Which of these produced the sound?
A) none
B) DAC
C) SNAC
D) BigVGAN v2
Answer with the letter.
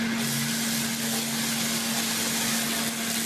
A